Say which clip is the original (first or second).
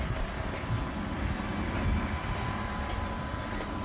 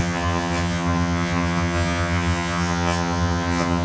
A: first